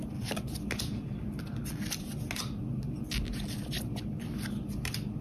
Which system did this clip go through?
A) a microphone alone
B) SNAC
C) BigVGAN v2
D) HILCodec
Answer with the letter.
A